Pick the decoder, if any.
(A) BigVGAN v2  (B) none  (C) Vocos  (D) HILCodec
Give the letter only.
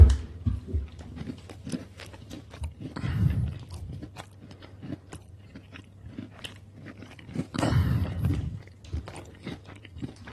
A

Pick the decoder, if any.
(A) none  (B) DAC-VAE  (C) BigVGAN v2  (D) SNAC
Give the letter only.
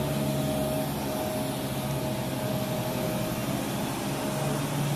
A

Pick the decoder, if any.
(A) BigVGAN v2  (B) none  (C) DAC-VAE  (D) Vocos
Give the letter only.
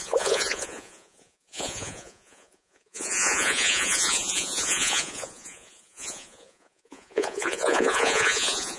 D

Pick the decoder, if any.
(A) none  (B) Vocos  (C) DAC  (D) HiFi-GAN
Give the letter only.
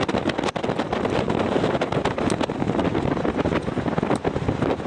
A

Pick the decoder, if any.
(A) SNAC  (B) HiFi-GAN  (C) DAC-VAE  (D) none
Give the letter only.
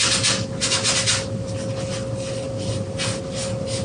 D